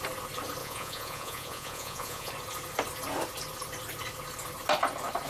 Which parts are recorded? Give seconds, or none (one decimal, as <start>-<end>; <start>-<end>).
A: 0.0-0.6; 2.3-5.3